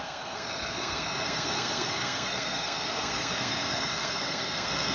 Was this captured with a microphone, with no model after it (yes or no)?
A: no